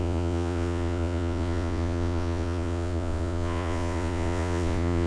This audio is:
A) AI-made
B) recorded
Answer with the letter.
A